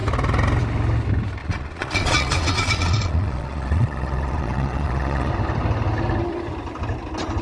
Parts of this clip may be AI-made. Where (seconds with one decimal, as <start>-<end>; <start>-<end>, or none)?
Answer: 1.4-5.3